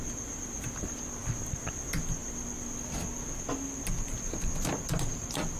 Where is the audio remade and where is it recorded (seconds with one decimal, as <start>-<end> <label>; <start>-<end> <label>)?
0.0-5.6 recorded